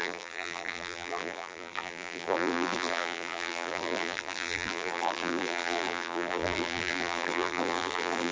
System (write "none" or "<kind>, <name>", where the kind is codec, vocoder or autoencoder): vocoder, BigVGAN v2